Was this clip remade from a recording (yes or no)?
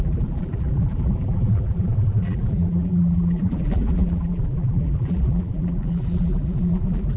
yes